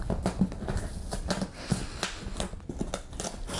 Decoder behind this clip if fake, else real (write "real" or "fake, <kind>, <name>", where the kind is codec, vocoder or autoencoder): real